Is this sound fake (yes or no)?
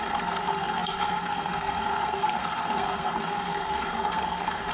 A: yes